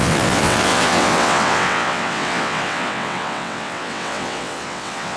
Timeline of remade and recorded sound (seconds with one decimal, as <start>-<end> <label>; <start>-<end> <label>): 0.0-5.2 remade